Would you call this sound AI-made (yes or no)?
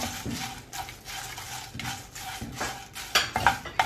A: no